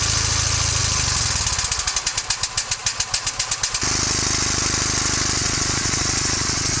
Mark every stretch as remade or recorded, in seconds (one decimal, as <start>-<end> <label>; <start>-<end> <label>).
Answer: 0.0-5.4 recorded; 5.4-6.8 remade